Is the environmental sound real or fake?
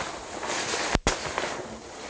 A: real